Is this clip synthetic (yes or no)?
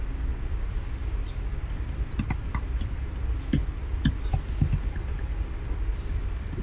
no